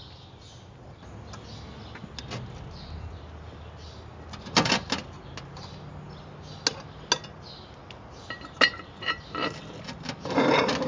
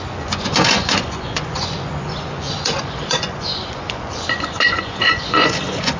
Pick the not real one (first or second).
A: second